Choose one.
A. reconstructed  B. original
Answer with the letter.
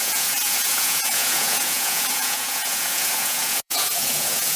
A